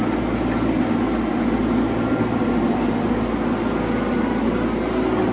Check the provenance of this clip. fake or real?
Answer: real